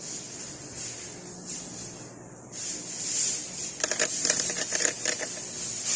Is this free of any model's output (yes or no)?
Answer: yes